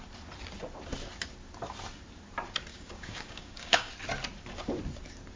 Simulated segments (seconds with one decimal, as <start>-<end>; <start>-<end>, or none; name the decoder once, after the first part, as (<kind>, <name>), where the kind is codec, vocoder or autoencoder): 2.7-3.9 (codec, DAC)